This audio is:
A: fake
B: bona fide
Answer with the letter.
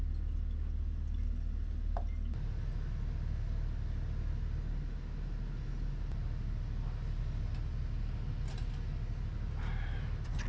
B